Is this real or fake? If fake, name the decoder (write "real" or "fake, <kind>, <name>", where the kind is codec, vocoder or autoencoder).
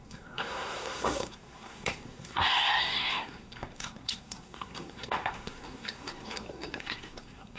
fake, codec, SNAC